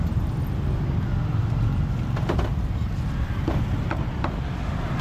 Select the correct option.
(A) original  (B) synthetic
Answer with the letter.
A